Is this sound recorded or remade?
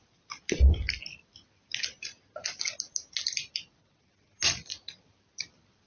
recorded